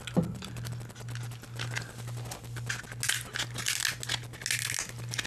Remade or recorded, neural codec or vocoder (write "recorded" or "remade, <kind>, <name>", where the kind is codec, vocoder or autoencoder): recorded